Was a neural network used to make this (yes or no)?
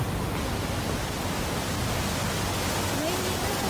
no